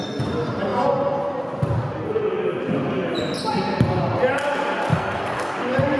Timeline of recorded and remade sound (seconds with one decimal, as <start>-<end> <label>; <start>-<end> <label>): 0.0-4.9 recorded; 4.9-5.5 remade; 5.5-6.0 recorded